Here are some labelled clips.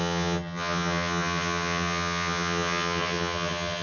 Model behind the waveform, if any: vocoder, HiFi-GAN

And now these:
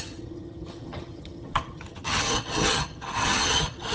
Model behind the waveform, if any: vocoder, HiFi-GAN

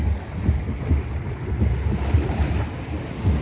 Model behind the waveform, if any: none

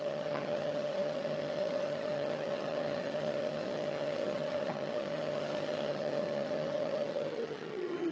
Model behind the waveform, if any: vocoder, HiFi-GAN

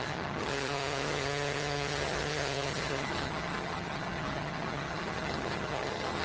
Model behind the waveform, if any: vocoder, HiFi-GAN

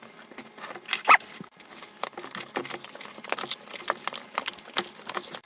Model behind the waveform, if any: none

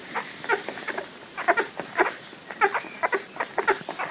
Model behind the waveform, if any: none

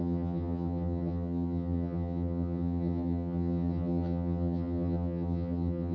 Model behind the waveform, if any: vocoder, HiFi-GAN